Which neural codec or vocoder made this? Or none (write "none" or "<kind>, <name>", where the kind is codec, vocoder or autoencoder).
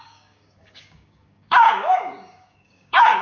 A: codec, DAC